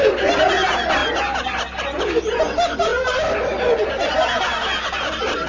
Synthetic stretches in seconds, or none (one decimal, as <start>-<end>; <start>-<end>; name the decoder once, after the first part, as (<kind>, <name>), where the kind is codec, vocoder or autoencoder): none